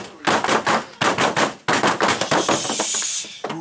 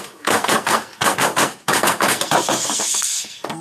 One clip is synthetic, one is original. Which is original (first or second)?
first